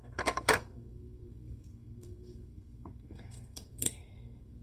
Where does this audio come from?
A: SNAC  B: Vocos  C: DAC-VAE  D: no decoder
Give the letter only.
A